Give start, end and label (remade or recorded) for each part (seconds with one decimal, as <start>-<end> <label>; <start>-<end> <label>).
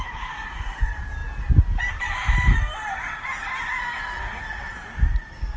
0.0-5.6 recorded